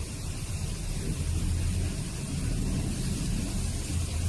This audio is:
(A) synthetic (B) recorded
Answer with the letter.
B